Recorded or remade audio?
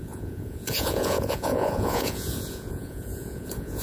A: remade